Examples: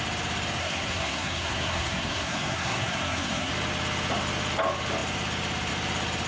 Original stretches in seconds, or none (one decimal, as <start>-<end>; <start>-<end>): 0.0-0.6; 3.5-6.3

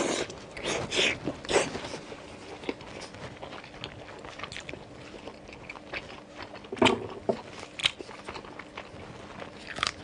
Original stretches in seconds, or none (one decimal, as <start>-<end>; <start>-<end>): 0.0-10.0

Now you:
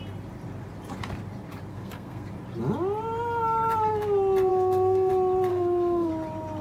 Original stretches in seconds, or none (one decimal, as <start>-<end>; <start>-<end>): 0.0-1.7; 2.3-4.5; 5.1-5.5; 6.1-6.6

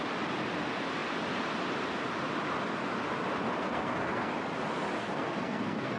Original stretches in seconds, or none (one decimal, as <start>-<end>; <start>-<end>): 0.0-3.5; 4.3-5.0